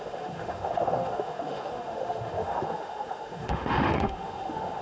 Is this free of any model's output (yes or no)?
no